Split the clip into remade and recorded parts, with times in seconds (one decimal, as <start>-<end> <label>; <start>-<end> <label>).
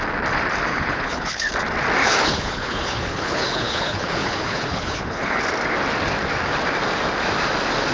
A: 0.0-0.7 recorded; 0.7-1.5 remade; 1.5-2.0 recorded; 2.0-5.4 remade; 5.4-7.9 recorded